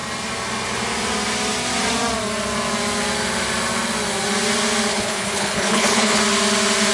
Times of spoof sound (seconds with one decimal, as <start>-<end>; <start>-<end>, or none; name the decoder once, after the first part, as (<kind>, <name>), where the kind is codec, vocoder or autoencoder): 4.9-6.2 (codec, HILCodec)